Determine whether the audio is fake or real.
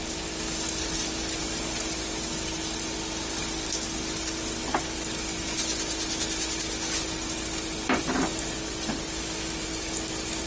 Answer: real